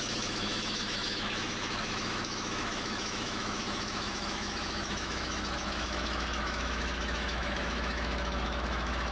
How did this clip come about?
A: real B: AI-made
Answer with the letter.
B